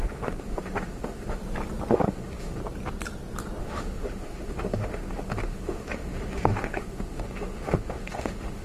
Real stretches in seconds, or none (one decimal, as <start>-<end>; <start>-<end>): 1.4-1.9; 2.6-3.6